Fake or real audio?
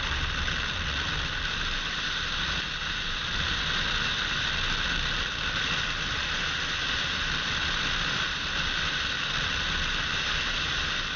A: real